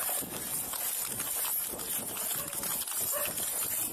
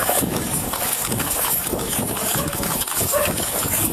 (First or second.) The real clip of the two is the first